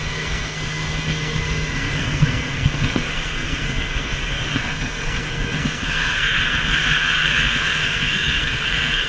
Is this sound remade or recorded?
remade